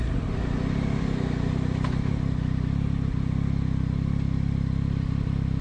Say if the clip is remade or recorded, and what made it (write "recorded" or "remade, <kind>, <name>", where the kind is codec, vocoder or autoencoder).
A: recorded